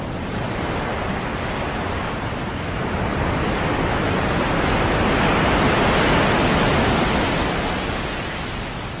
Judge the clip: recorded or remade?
recorded